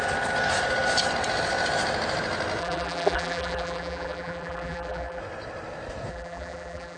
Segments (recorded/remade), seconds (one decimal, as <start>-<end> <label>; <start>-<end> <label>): 0.0-2.6 recorded; 2.6-5.2 remade; 5.2-6.1 recorded; 6.1-7.0 remade